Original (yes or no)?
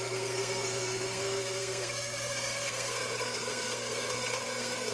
no